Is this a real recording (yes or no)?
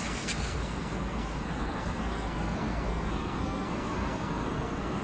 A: no